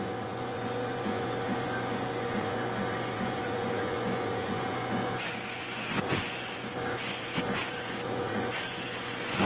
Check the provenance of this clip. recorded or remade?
remade